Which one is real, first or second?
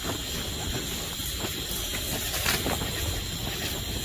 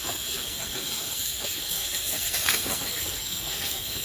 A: first